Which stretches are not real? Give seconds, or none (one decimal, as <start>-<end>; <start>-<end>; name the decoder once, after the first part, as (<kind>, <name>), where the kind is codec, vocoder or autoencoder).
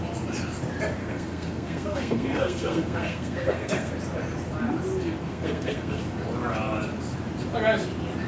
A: 1.0-3.9 (codec, SNAC); 5.3-6.0